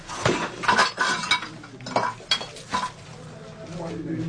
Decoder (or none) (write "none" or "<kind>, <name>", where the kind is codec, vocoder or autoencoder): none